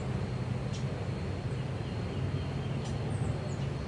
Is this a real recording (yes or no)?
yes